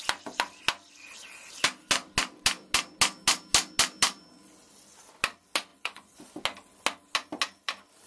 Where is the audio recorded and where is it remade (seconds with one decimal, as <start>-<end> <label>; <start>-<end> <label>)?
0.0-5.7 recorded; 5.7-6.2 remade; 6.2-8.1 recorded